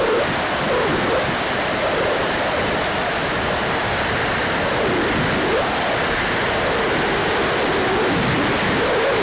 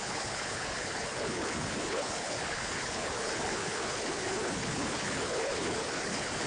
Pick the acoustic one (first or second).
first